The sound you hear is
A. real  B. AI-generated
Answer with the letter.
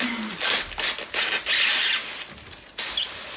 A